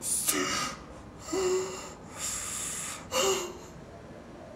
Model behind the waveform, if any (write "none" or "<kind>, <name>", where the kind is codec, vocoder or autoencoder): none